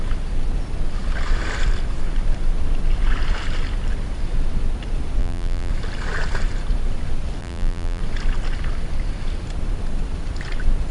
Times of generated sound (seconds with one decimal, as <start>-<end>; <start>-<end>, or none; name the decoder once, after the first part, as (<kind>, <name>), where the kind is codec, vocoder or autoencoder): 5.2-5.7 (vocoder, BigVGAN v2); 7.4-8.0